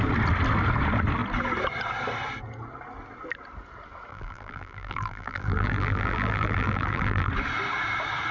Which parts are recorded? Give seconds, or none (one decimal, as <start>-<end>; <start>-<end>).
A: 0.0-4.1; 7.3-8.3